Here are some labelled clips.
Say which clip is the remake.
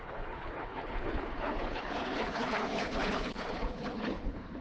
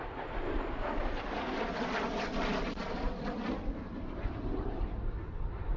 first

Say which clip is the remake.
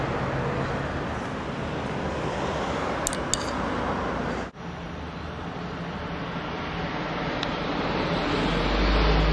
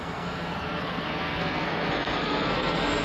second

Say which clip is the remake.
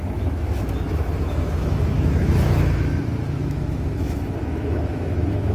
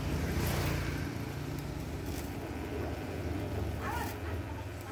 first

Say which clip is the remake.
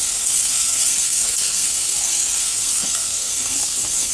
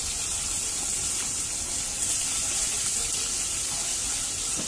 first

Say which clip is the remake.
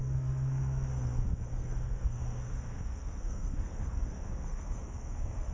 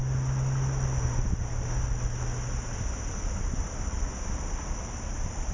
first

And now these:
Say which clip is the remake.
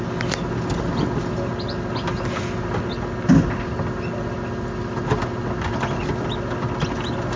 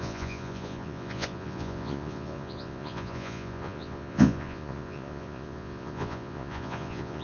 second